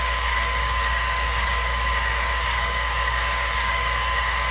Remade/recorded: remade